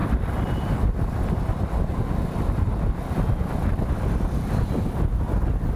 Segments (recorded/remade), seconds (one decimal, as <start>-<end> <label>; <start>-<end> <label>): 0.0-5.8 recorded